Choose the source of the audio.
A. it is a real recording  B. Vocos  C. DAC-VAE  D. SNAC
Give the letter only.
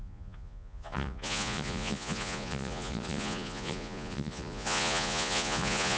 B